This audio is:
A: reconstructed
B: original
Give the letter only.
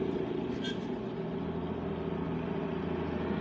B